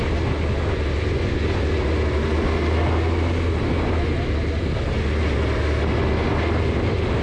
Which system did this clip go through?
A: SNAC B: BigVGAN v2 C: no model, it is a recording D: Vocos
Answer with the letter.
C